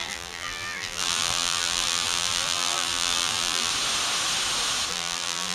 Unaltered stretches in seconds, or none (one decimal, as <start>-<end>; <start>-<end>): 3.7-4.9